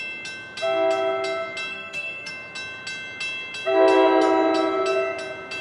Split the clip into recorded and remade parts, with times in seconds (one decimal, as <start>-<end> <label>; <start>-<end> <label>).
0.0-1.7 recorded; 1.7-2.3 remade; 2.3-5.6 recorded